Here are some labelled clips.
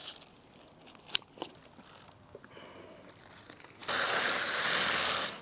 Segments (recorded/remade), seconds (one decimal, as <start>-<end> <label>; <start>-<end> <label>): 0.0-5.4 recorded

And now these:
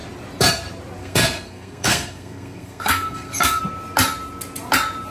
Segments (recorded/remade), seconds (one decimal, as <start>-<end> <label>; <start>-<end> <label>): 0.0-1.0 recorded; 1.0-3.6 remade; 3.6-5.1 recorded

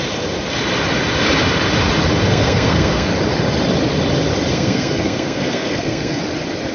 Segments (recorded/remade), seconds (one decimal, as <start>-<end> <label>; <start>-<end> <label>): 0.0-2.3 recorded; 2.3-3.1 remade; 3.1-4.5 recorded; 4.5-6.2 remade; 6.2-6.7 recorded

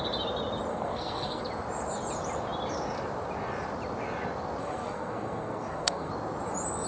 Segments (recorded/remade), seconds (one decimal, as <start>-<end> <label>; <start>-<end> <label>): 0.0-0.7 recorded; 0.7-1.4 remade; 1.4-4.6 recorded; 4.6-6.1 remade; 6.1-6.9 recorded

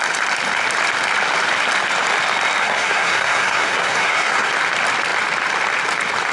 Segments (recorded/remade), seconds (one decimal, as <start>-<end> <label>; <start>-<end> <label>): 0.0-2.6 recorded; 2.6-4.5 remade; 4.5-6.3 recorded

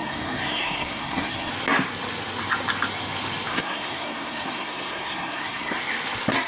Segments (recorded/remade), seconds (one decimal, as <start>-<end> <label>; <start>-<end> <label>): 0.0-1.5 remade; 1.5-3.5 recorded; 3.5-5.8 remade; 5.8-6.5 recorded

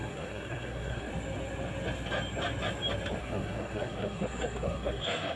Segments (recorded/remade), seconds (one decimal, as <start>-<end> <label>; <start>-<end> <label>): 0.0-1.1 remade; 1.1-3.2 recorded; 3.2-5.4 remade